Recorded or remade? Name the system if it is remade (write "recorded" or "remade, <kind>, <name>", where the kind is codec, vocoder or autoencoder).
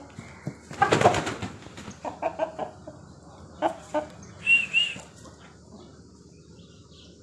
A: recorded